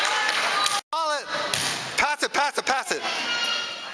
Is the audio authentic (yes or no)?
yes